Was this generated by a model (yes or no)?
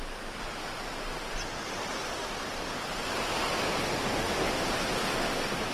no